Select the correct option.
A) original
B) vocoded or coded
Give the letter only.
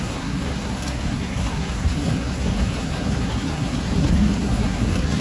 B